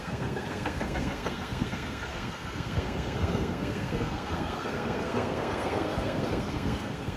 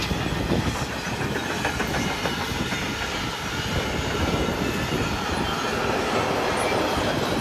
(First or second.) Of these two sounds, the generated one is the first